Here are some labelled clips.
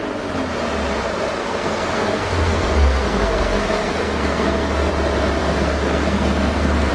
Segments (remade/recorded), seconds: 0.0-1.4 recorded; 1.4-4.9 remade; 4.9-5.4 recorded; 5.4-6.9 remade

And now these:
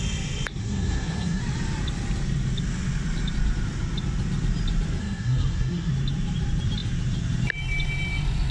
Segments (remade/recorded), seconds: 0.0-0.6 recorded; 0.6-1.4 remade; 1.4-5.0 recorded; 5.0-5.9 remade; 5.9-8.5 recorded